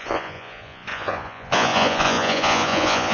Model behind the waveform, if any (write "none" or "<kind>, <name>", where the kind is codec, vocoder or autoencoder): vocoder, Vocos